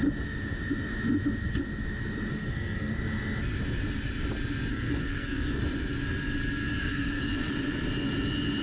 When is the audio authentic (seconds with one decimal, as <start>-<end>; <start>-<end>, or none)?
0.0-2.3; 2.9-4.7; 5.6-6.8; 7.5-8.6